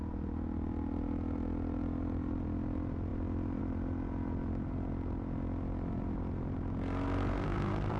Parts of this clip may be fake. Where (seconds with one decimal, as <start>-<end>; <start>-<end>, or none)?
7.3-8.0